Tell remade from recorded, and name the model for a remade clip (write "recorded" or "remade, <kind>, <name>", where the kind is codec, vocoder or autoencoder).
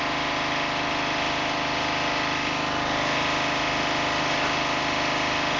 recorded